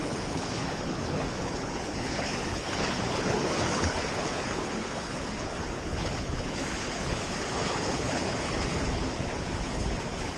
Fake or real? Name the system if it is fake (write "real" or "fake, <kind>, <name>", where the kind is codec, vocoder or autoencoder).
fake, codec, HILCodec